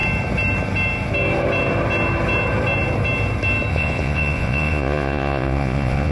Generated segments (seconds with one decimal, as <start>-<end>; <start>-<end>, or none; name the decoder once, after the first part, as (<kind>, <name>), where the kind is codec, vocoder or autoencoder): 3.7-6.1 (vocoder, Vocos)